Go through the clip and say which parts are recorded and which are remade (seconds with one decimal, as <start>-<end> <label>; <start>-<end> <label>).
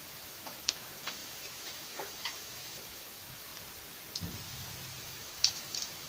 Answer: 0.0-3.5 remade; 3.5-5.0 recorded; 5.0-6.1 remade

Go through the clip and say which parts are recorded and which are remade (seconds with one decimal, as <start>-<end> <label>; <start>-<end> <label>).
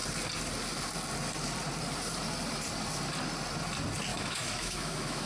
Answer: 0.0-4.1 recorded; 4.1-5.3 remade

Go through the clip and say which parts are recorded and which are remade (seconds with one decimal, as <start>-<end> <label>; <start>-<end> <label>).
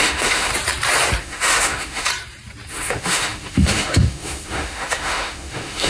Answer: 0.0-0.5 remade; 0.5-1.2 recorded; 1.2-2.1 remade; 2.1-2.7 recorded; 2.7-5.9 remade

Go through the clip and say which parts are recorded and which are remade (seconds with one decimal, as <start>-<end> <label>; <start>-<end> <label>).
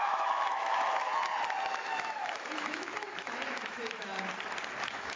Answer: 0.0-1.1 remade; 1.1-1.7 recorded; 1.7-4.1 remade; 4.1-4.8 recorded; 4.8-5.2 remade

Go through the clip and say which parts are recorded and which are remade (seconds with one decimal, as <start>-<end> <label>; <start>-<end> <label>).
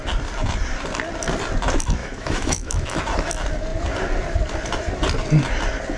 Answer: 0.0-2.0 recorded; 2.0-3.0 remade; 3.0-6.0 recorded